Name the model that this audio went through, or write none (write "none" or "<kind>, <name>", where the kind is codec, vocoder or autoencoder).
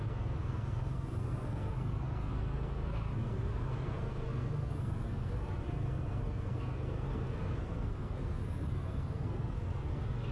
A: codec, SNAC